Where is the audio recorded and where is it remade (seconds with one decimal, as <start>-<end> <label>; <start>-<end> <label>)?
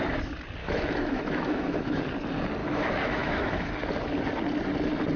0.0-0.6 recorded; 0.6-2.0 remade; 2.0-2.6 recorded; 2.6-3.7 remade; 3.7-5.2 recorded